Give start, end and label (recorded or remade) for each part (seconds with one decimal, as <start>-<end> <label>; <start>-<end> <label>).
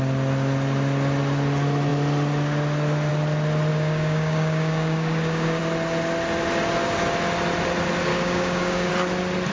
0.0-3.7 recorded; 3.7-5.6 remade; 5.6-8.1 recorded; 8.1-8.9 remade; 8.9-9.5 recorded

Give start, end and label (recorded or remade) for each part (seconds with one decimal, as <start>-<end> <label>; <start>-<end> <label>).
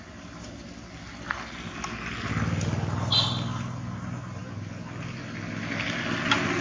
0.0-6.6 recorded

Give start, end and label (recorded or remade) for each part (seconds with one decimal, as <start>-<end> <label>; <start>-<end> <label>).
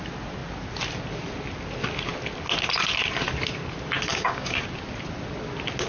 0.0-4.1 recorded; 4.1-4.6 remade; 4.6-5.9 recorded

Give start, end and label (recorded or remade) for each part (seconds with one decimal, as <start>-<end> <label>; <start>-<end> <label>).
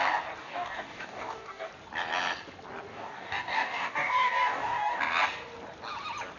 0.0-0.4 recorded; 0.4-1.7 remade; 1.7-2.9 recorded; 2.9-5.0 remade; 5.0-6.4 recorded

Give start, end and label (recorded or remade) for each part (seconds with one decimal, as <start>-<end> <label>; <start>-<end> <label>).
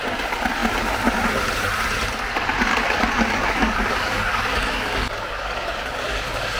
0.0-2.7 recorded; 2.7-6.6 remade